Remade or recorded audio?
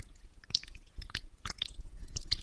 remade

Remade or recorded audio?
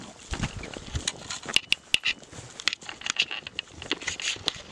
recorded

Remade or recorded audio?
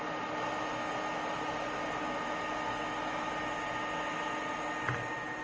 recorded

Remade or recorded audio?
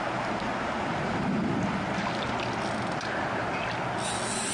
recorded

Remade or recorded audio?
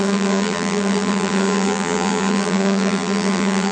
remade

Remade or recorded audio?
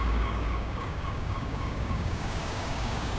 remade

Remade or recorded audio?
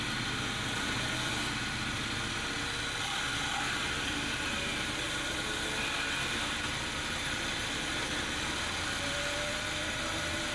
recorded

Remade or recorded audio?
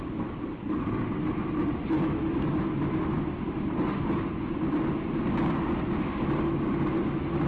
recorded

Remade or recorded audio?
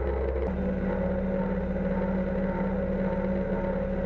recorded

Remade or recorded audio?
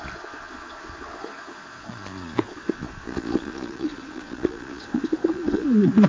remade